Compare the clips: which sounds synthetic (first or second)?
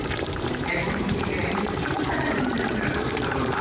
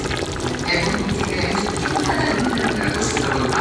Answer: first